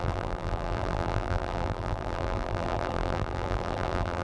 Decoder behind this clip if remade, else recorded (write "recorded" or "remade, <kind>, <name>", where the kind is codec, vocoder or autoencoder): remade, vocoder, BigVGAN v2